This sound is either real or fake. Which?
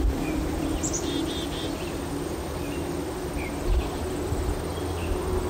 real